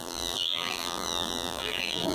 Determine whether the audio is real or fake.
fake